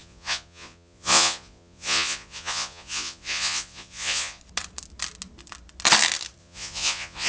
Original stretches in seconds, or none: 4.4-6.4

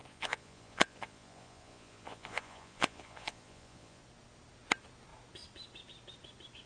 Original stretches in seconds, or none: 4.0-6.7